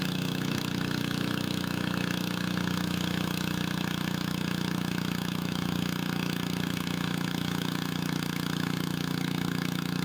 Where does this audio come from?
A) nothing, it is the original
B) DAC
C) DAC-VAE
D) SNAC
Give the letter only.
C